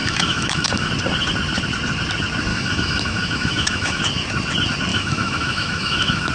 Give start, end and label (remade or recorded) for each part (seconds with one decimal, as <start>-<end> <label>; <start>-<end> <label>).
0.0-0.9 remade; 0.9-2.5 recorded; 2.5-4.0 remade; 4.0-4.9 recorded; 4.9-6.3 remade